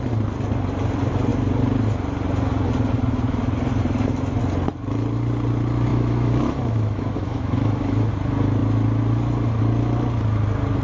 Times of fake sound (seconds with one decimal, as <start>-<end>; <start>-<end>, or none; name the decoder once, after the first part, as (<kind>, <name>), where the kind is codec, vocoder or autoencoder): 5.9-8.1 (autoencoder, DAC-VAE)